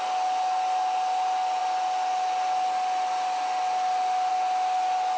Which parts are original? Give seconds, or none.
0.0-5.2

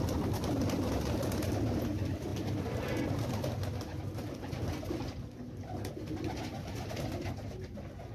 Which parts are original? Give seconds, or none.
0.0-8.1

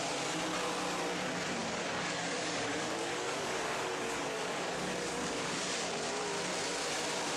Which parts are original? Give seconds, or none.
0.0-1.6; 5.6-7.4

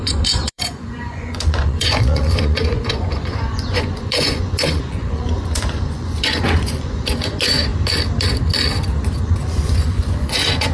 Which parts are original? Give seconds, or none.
7.7-9.2

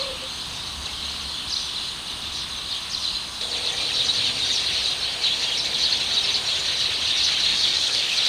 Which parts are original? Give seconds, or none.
0.0-7.5